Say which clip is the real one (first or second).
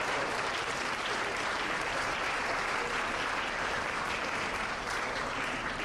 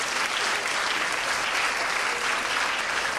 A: second